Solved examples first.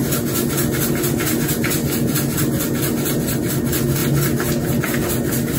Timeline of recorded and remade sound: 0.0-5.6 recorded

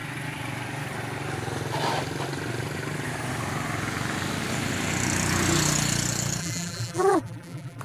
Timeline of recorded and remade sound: 0.0-6.4 recorded; 6.4-7.8 remade

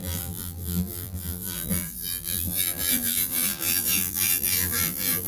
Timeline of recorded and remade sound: 0.0-5.3 remade

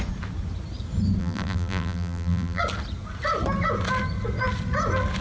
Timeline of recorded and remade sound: 0.0-1.2 recorded; 1.2-2.6 remade; 2.6-5.2 recorded

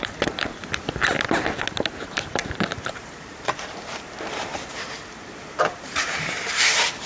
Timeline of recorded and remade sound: 0.0-0.6 remade; 0.6-2.0 recorded; 2.0-7.1 remade

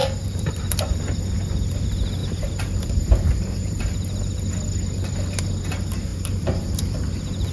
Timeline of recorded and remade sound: 0.0-0.6 remade; 0.6-2.2 recorded; 2.2-3.8 remade; 3.8-6.1 recorded; 6.1-7.0 remade; 7.0-7.5 recorded

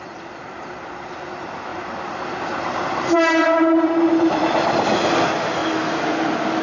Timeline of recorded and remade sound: 0.0-1.7 remade; 1.7-2.4 recorded; 2.4-5.6 remade; 5.6-6.6 recorded